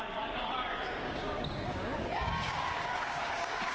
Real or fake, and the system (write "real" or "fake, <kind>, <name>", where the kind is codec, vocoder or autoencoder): fake, codec, DAC